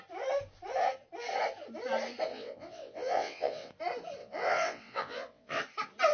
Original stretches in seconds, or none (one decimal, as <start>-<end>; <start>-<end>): 0.0-2.3; 3.7-4.2; 5.6-6.1